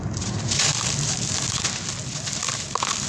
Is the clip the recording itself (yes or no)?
yes